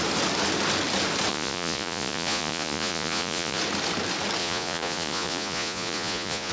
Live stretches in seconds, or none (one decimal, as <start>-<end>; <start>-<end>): 0.0-1.3; 3.6-4.4